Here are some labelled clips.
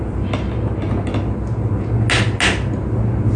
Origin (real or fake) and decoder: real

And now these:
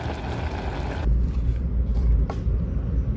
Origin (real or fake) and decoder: real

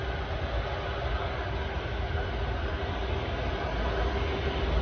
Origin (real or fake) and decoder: real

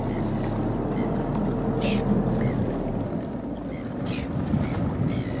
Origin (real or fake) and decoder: real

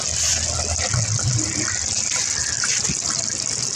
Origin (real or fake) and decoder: real